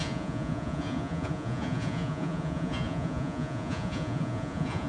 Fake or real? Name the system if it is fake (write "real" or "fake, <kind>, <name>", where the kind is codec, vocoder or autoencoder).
fake, vocoder, Vocos